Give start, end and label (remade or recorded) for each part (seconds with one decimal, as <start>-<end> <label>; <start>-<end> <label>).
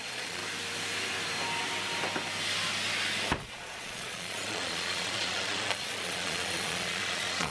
0.0-0.4 remade; 0.4-3.4 recorded; 3.4-7.5 remade